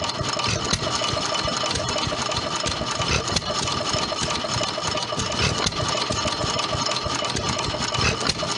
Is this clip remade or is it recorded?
recorded